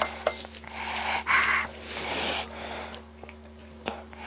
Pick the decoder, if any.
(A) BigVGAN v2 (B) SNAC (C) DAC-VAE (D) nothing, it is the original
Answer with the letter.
D